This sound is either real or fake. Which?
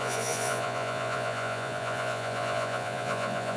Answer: fake